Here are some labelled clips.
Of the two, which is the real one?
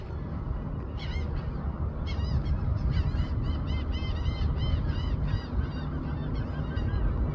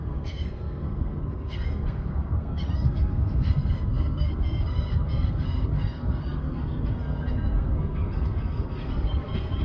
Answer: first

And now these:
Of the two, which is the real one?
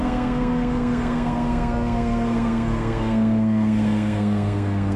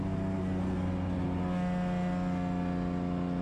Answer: second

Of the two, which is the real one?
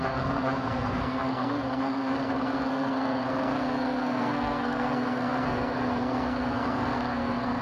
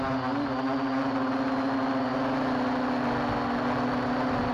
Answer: second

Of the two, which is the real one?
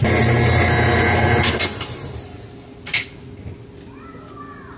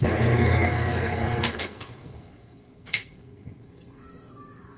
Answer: first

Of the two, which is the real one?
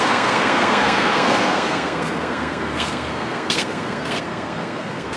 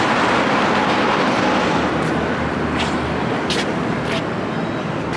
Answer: second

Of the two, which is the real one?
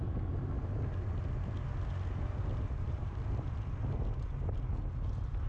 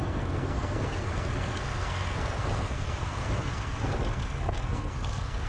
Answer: first